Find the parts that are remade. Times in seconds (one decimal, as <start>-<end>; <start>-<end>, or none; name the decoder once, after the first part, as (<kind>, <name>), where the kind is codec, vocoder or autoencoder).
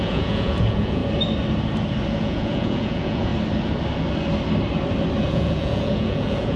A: 0.0-1.0 (vocoder, Vocos); 2.1-3.3; 5.3-6.6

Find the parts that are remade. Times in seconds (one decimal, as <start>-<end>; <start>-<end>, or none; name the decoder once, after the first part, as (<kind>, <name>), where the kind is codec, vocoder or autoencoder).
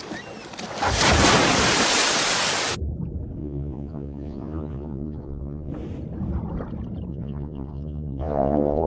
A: 3.4-5.7 (vocoder, Vocos); 7.1-8.9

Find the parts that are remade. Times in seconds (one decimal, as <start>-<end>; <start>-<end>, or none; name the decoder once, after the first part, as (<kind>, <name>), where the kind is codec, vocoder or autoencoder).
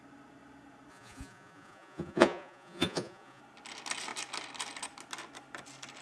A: 0.9-3.4 (vocoder, Vocos)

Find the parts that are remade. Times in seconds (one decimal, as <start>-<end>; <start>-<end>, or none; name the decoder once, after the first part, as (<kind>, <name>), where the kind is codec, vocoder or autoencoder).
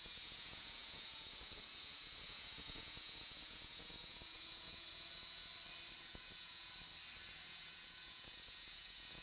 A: 0.0-5.5 (vocoder, Vocos); 6.0-6.8; 7.3-9.2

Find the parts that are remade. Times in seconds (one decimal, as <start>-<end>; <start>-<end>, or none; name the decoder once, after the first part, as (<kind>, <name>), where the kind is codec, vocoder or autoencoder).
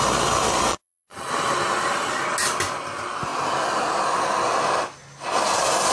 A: 0.7-1.3 (vocoder, Vocos)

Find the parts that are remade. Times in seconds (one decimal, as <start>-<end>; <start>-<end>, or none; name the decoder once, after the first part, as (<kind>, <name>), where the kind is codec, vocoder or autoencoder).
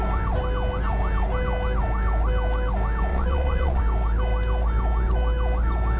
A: 3.1-3.8 (vocoder, Vocos)